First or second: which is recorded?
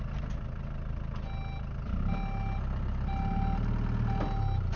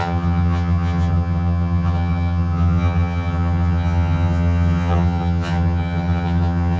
first